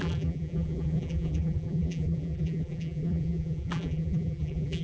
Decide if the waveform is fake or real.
fake